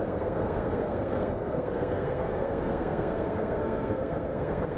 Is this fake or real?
fake